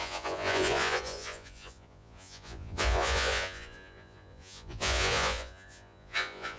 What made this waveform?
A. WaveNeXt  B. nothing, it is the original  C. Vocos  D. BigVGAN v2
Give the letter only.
C